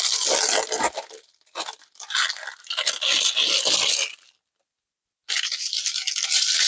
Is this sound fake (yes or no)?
no